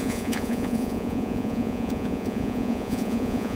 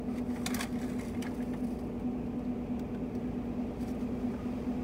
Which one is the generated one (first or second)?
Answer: first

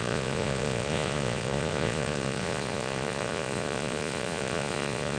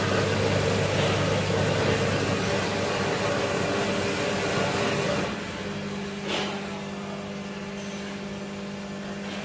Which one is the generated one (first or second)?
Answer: first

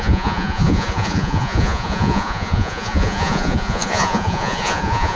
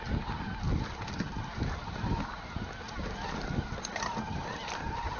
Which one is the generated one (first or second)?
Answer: first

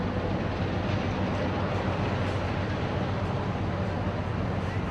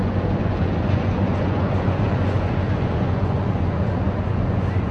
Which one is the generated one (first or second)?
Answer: second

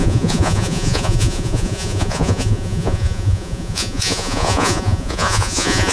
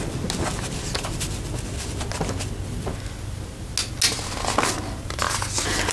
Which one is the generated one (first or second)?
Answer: first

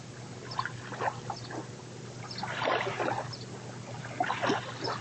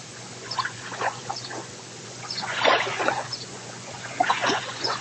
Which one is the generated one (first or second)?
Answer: second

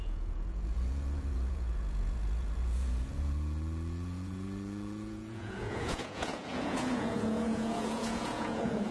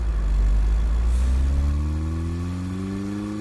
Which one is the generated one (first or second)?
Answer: first